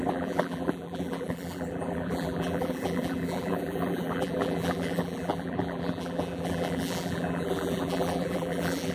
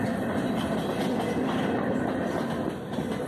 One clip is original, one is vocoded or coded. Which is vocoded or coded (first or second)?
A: first